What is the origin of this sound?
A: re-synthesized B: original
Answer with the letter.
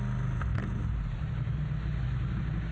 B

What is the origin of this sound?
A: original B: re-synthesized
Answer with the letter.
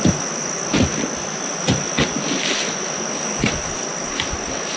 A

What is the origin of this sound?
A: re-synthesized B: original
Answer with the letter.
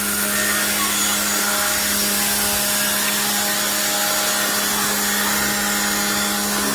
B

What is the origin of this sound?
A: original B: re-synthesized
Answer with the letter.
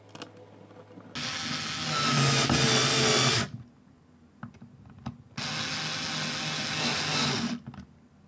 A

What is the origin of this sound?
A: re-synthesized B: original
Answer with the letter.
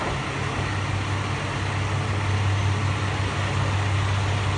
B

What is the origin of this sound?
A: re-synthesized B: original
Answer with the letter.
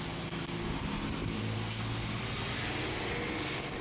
B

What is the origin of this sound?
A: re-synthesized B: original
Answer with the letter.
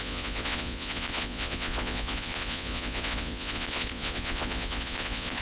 A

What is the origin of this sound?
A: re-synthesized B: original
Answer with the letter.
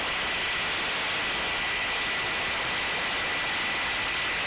B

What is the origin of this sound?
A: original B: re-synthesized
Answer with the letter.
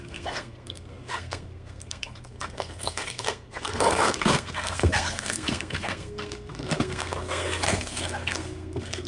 B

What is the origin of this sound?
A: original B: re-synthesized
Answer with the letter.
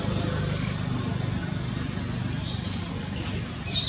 A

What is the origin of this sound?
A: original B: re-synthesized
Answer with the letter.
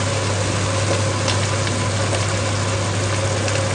A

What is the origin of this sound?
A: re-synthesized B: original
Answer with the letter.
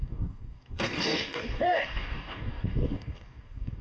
A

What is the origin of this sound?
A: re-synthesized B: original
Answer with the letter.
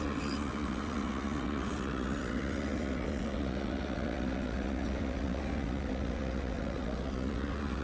A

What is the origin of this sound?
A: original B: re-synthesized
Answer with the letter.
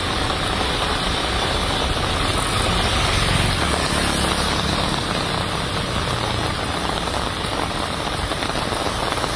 A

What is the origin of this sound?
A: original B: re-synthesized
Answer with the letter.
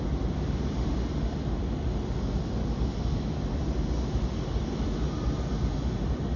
A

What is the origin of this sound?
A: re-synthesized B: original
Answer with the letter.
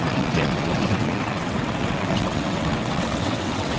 A